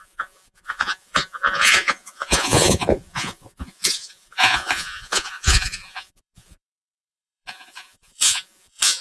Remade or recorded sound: remade